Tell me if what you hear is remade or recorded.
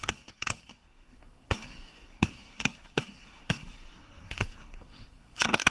remade